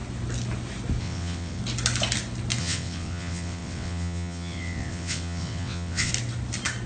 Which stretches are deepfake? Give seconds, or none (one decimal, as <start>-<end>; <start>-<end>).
1.0-1.6; 2.6-6.1